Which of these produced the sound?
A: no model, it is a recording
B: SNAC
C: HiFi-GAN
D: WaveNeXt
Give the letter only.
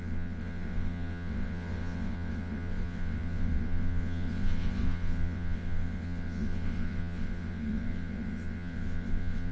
D